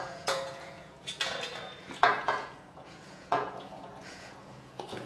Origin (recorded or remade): remade